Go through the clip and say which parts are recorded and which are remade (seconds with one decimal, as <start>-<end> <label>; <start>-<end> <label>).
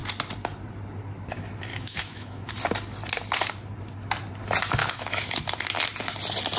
0.0-1.7 recorded; 1.7-2.5 remade; 2.5-4.8 recorded; 4.8-5.4 remade; 5.4-6.6 recorded